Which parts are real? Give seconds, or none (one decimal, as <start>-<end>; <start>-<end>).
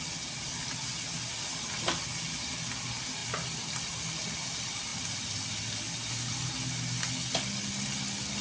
0.0-8.4